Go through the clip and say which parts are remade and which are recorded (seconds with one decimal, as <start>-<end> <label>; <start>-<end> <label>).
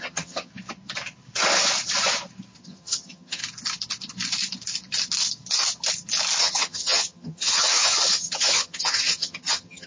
0.0-0.5 remade; 0.5-2.6 recorded; 2.6-3.4 remade; 3.4-6.4 recorded; 6.4-9.9 remade